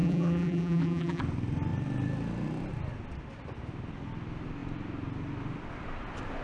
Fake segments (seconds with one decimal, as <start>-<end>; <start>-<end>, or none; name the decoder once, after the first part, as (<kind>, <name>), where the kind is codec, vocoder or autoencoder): 0.0-1.2 (vocoder, BigVGAN v2)